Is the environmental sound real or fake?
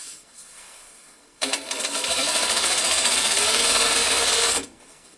fake